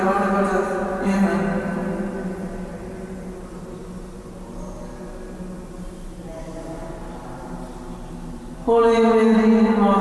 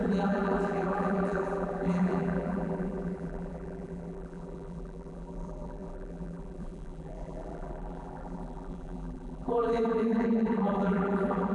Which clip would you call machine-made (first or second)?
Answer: second